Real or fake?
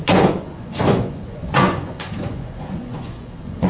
fake